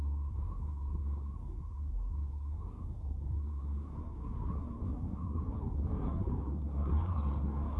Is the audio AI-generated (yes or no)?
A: yes